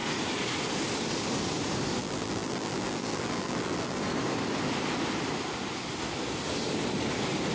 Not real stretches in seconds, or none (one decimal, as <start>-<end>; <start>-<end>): 2.0-4.0